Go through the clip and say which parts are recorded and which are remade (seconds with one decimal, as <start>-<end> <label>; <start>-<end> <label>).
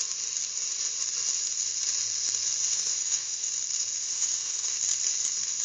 0.0-2.7 recorded; 2.7-3.5 remade; 3.5-4.0 recorded; 4.0-4.8 remade; 4.8-5.6 recorded